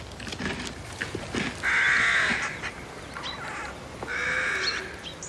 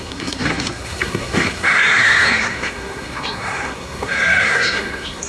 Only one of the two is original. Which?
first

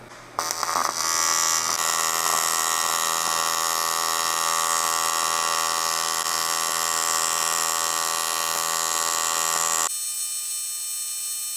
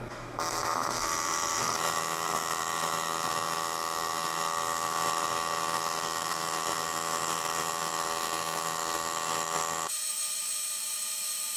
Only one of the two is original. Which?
first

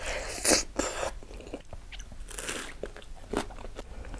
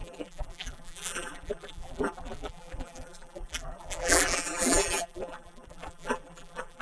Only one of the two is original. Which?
first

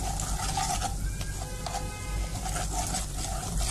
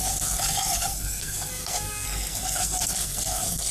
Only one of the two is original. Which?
first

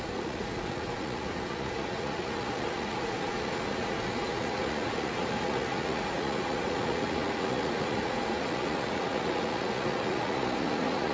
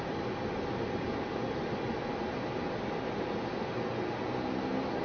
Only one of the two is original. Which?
second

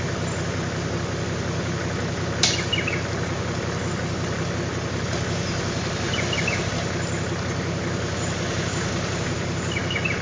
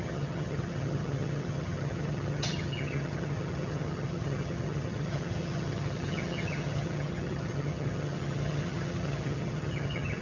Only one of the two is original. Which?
first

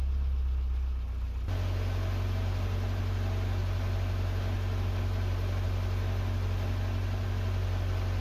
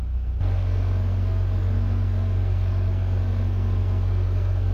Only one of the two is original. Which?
first